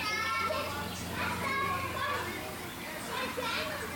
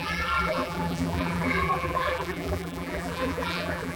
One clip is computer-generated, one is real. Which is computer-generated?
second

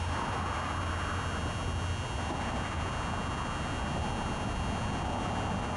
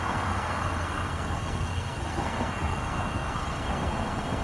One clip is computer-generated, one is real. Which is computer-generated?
second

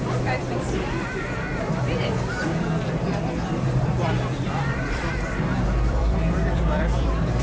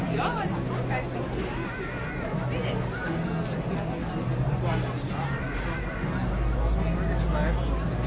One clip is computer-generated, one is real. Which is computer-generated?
first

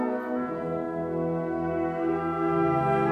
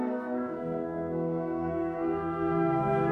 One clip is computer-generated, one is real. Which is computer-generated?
second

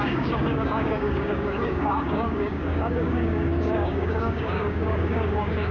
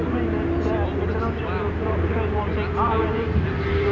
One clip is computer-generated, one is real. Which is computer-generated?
first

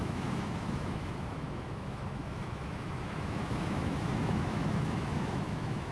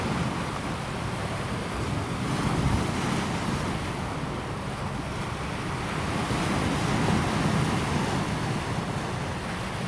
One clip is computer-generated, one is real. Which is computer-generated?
first